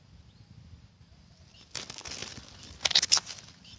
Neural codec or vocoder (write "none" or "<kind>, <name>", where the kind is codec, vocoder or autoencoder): none